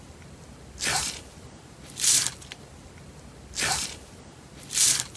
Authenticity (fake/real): fake